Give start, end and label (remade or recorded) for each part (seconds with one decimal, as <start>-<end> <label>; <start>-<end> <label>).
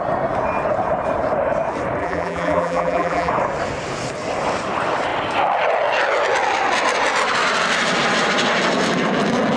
0.0-2.0 recorded; 2.0-3.3 remade; 3.3-9.6 recorded